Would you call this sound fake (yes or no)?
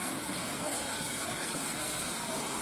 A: yes